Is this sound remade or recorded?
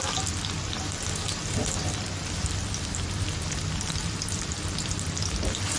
recorded